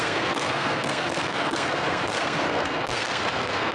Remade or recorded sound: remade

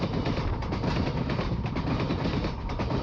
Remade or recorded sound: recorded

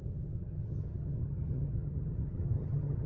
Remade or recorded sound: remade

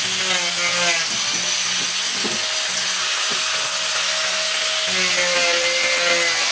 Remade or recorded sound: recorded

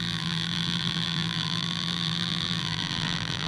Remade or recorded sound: remade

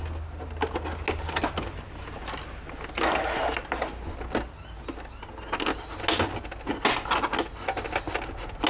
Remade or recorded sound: recorded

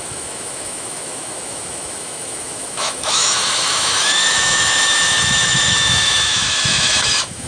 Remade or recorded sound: remade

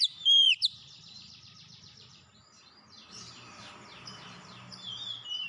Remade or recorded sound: remade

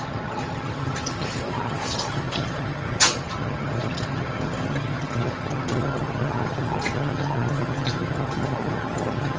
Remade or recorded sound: remade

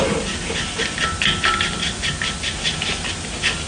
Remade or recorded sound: recorded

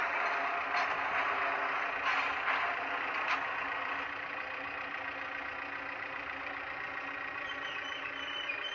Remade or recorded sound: recorded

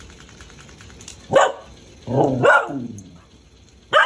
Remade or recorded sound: recorded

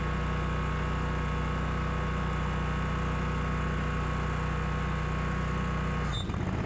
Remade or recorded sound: recorded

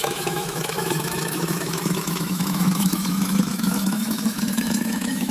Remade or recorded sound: remade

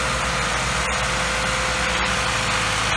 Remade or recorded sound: recorded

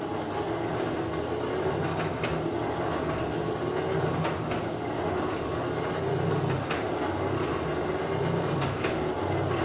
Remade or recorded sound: recorded